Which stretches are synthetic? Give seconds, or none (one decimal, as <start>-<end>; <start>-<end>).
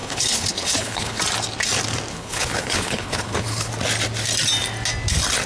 0.0-1.2; 2.1-3.7